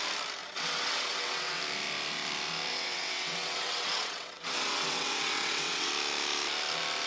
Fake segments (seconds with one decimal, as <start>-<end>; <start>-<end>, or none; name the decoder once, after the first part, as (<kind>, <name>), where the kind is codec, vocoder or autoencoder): 0.4-1.6 (vocoder, WaveNeXt); 2.7-5.9